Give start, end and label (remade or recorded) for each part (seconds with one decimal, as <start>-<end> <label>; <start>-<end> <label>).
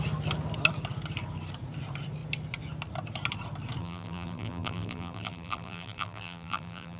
0.0-3.8 recorded; 3.8-7.0 remade